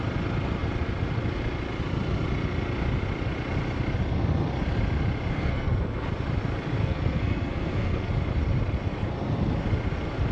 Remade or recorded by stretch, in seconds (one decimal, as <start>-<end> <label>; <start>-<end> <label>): 0.0-5.3 recorded; 5.3-6.1 remade; 6.1-6.8 recorded; 6.8-8.1 remade; 8.1-10.3 recorded